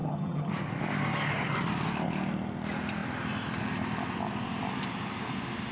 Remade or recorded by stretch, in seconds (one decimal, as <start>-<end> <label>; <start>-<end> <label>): 0.0-0.5 remade; 0.5-5.7 recorded